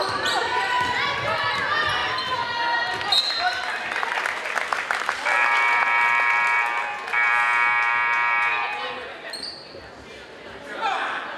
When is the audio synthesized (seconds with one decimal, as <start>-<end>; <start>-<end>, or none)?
2.0-2.6; 4.7-9.9